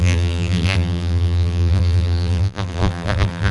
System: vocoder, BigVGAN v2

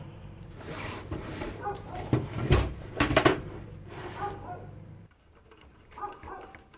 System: vocoder, BigVGAN v2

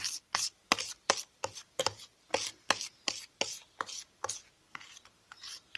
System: none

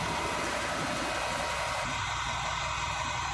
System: none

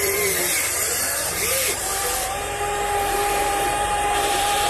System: vocoder, BigVGAN v2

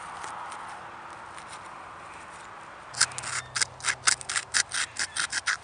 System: none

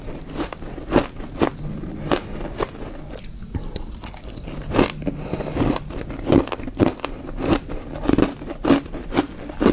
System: none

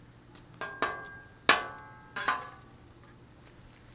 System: none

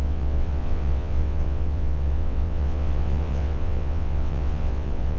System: vocoder, WaveNeXt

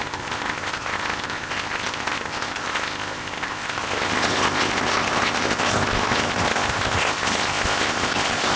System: codec, ZipCodec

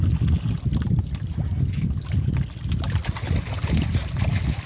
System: none